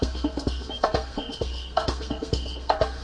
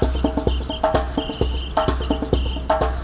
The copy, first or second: first